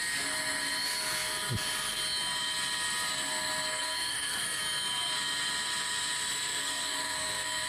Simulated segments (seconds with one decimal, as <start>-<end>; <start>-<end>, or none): 3.7-4.6; 6.3-7.7